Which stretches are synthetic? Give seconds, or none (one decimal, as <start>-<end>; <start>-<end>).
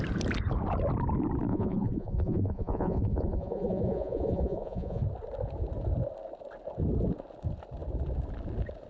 1.5-5.0